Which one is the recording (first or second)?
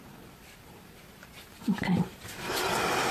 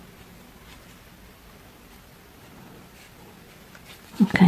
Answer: second